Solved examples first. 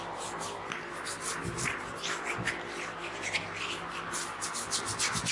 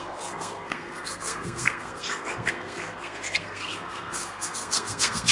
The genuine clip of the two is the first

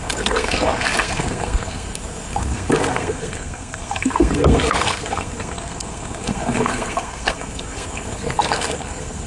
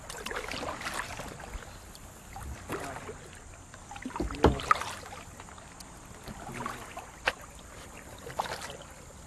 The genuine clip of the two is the second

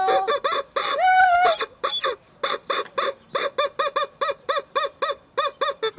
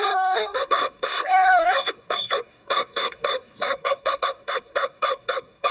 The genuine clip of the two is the first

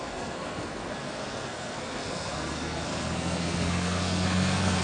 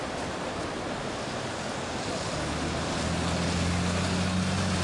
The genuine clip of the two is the second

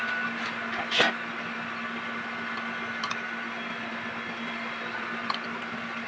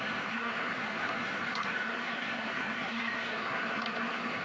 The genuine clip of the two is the first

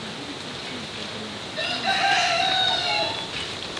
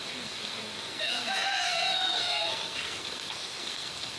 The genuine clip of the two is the first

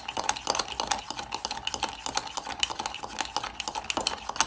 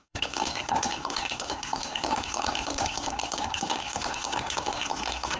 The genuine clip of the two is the first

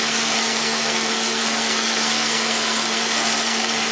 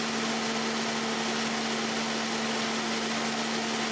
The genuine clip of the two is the second